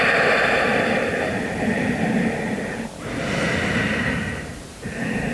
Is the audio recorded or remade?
recorded